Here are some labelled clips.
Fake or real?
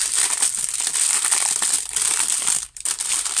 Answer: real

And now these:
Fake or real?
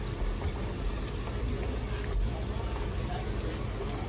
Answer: real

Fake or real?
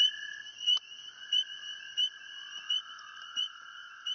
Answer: fake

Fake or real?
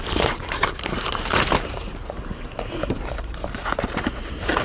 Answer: fake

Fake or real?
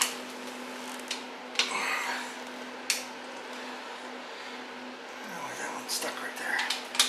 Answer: real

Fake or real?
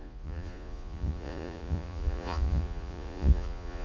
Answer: fake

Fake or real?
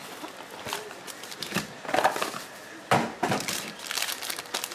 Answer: real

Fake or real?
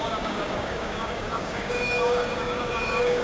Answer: fake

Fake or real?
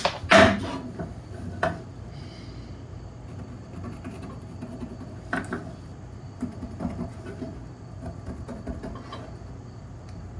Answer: real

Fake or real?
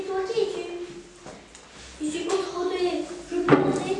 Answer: real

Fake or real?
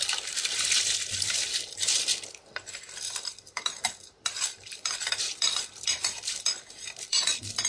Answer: fake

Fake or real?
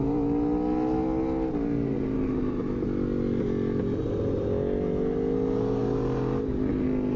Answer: real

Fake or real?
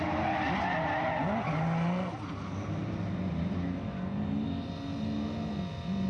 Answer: real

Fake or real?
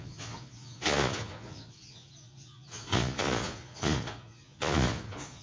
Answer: fake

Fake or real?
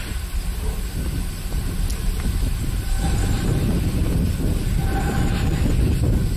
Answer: real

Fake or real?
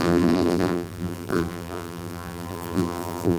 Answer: fake